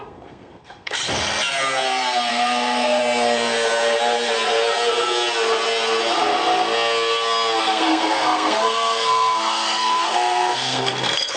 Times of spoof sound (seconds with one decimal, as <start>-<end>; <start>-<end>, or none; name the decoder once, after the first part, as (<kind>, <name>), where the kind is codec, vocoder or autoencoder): 0.0-1.0 (codec, SNAC); 2.3-3.0; 7.6-11.4